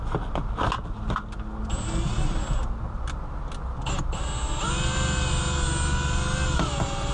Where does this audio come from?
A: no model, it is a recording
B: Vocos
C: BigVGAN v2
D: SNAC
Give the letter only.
A